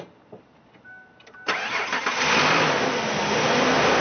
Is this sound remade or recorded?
recorded